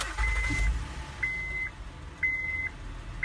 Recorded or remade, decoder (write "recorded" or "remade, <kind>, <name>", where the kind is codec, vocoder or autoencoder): recorded